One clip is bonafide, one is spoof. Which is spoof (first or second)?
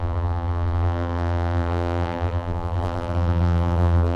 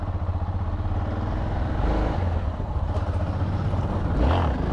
first